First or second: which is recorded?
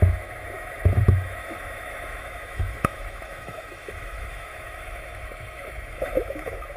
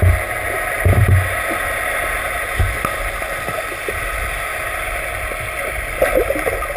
second